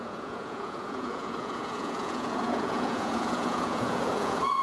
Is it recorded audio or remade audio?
remade